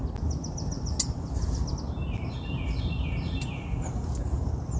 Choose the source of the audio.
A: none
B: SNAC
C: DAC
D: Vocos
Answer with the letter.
A